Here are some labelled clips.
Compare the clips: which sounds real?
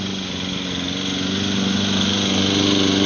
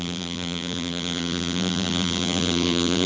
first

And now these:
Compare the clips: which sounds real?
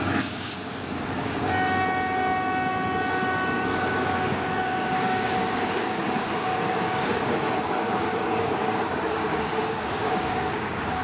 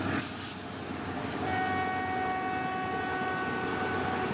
second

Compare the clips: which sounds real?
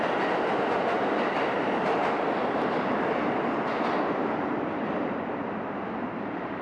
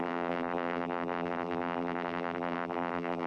first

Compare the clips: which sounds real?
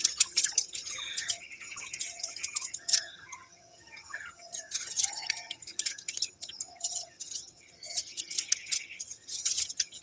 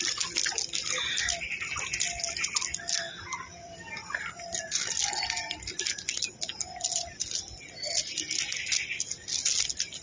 second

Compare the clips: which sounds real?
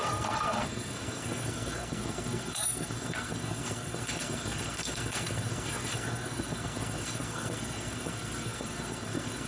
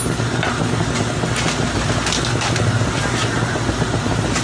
second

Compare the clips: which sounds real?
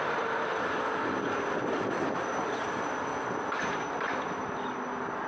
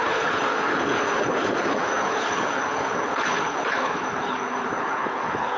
first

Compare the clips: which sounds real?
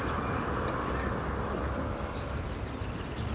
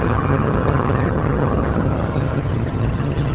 first